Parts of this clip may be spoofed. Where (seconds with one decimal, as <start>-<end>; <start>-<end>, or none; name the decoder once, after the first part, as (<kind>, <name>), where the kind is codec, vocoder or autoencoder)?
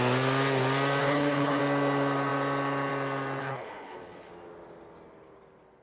1.0-1.6 (codec, HILCodec); 3.4-4.3